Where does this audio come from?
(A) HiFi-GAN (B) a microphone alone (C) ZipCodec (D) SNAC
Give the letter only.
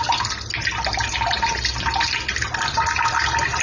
B